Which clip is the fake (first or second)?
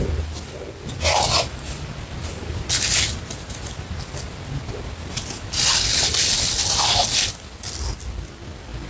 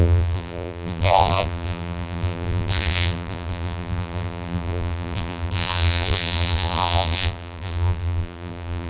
second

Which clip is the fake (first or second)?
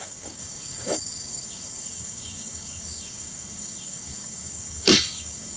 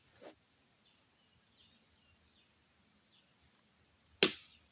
first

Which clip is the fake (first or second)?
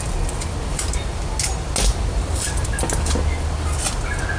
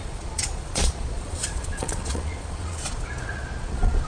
second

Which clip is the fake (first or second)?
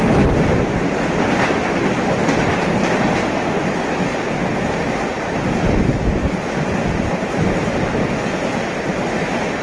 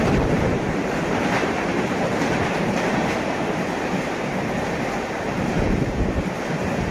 second